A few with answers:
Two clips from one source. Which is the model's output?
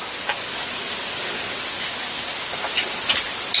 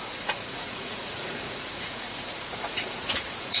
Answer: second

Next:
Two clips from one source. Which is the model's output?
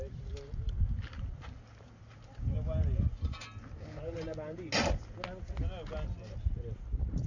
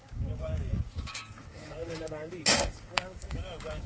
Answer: second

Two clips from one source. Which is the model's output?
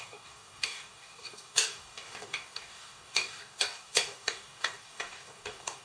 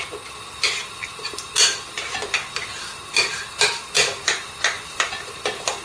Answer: first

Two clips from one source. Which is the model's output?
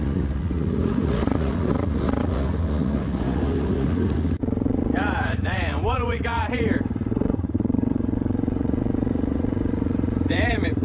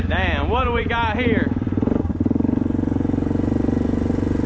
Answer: first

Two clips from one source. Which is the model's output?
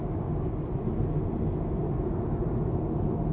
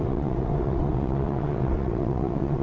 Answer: second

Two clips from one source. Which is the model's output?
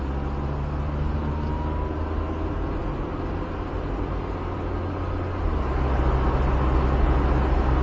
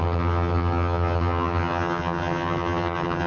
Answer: second